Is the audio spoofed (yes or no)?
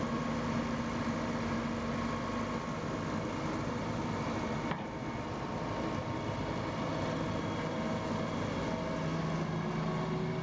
no